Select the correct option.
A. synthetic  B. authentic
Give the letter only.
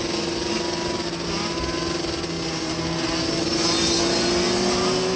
B